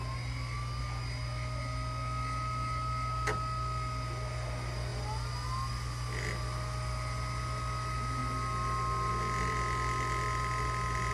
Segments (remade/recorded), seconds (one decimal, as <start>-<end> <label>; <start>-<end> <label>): 0.0-11.1 recorded